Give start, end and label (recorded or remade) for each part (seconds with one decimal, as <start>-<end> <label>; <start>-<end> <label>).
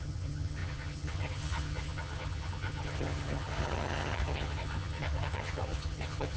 0.0-6.4 remade